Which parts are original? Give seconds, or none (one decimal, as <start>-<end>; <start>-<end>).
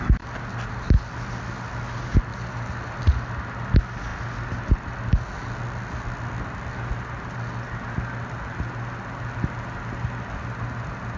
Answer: 0.0-11.2